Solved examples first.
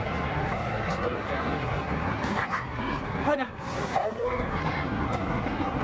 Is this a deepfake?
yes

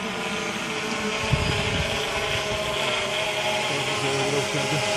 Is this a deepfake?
no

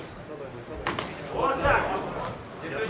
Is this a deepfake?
no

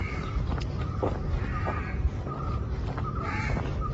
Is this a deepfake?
no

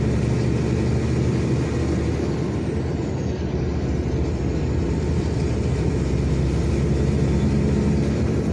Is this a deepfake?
no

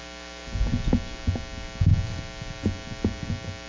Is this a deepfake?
no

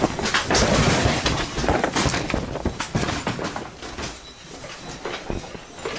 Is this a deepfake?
no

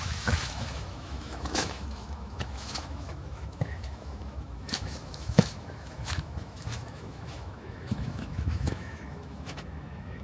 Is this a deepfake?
yes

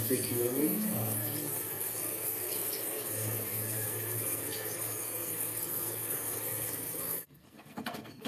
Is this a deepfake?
yes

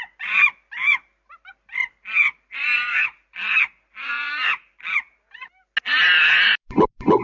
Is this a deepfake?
no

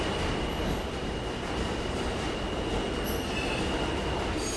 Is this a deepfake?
no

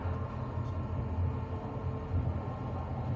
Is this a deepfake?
no